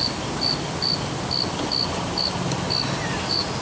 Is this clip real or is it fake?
real